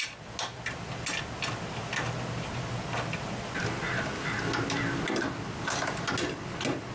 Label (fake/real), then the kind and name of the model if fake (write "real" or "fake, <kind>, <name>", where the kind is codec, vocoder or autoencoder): real